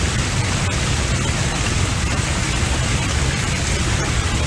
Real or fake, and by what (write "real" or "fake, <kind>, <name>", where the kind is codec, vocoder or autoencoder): real